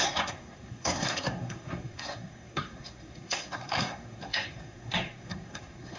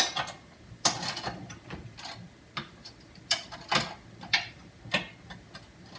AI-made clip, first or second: first